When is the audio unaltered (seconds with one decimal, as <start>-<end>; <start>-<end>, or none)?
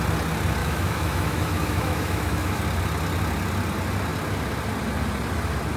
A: 0.0-0.6; 2.6-5.8